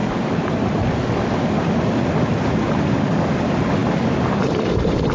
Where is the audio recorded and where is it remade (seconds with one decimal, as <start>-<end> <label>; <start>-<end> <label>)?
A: 0.0-5.1 recorded